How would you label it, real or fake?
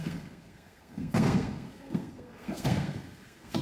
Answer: fake